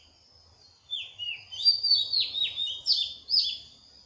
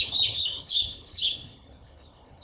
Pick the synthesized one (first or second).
second